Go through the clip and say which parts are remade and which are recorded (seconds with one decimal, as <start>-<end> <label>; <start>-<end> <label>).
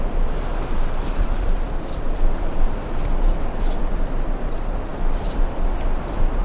0.0-0.5 recorded; 0.5-3.8 remade; 3.8-4.9 recorded; 4.9-6.4 remade